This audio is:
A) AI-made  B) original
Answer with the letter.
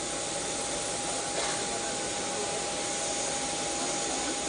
B